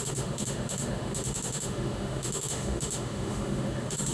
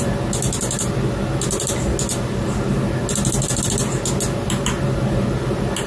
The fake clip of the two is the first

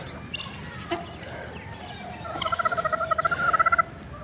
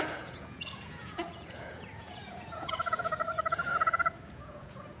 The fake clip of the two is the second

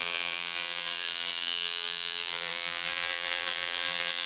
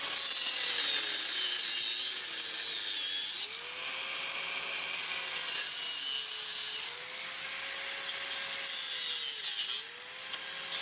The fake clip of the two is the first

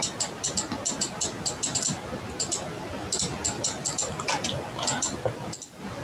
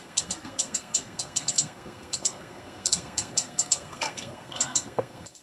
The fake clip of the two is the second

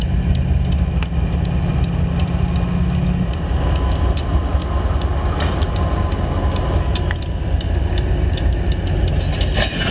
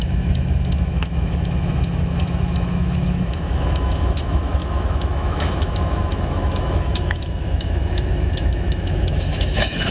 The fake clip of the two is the second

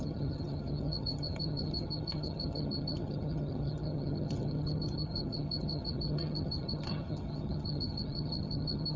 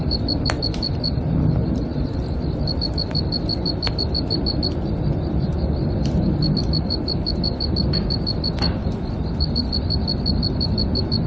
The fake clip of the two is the first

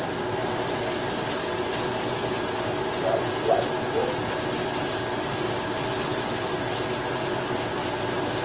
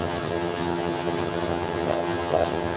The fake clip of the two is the second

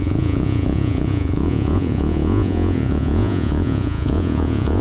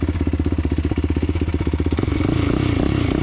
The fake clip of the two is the first